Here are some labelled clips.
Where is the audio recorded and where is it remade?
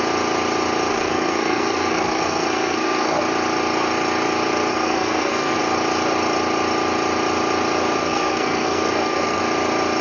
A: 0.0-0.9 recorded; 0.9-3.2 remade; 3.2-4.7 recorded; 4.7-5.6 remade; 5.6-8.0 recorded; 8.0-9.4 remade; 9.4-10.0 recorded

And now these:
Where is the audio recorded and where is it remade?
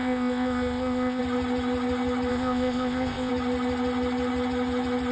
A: 0.0-1.2 remade; 1.2-2.3 recorded; 2.3-3.3 remade; 3.3-5.1 recorded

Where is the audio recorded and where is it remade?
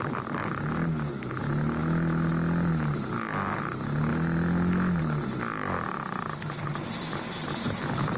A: 0.0-8.2 recorded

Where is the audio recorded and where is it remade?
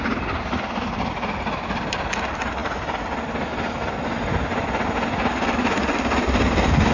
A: 0.0-6.9 recorded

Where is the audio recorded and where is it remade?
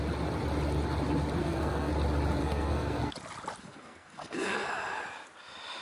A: 0.0-1.4 recorded; 1.4-1.9 remade; 1.9-2.4 recorded; 2.4-3.1 remade; 3.1-3.6 recorded; 3.6-4.7 remade; 4.7-5.8 recorded